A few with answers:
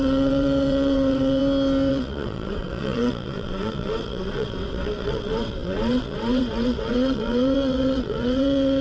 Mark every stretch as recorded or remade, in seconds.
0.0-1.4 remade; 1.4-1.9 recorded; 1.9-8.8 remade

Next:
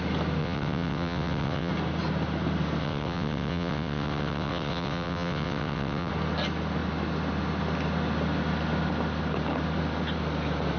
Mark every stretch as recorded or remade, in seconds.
0.0-0.4 recorded; 0.4-1.7 remade; 1.7-2.8 recorded; 2.8-6.1 remade; 6.1-10.8 recorded

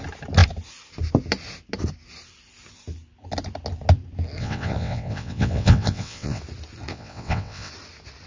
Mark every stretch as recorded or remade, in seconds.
0.0-4.4 recorded; 4.4-6.4 remade; 6.4-6.9 recorded; 6.9-7.7 remade; 7.7-8.3 recorded

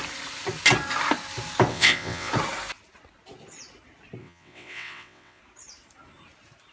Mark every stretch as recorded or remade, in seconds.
0.0-1.7 recorded; 1.7-2.3 remade; 2.3-4.2 recorded; 4.2-5.4 remade; 5.4-6.7 recorded

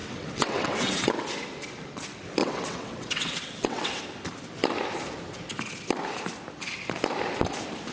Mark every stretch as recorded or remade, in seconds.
0.0-1.1 remade; 1.1-2.4 recorded; 2.4-4.0 remade; 4.0-7.9 recorded

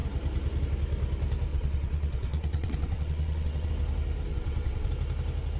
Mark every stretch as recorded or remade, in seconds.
0.0-1.5 recorded; 1.5-3.7 remade; 3.7-4.3 recorded; 4.3-4.9 remade; 4.9-5.6 recorded

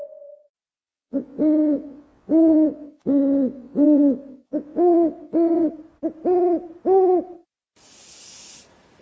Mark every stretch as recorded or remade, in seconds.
0.0-0.8 recorded; 0.8-5.7 remade; 5.7-9.0 recorded

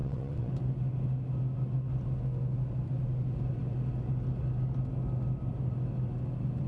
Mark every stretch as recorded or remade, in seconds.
0.0-0.5 remade; 0.5-6.7 recorded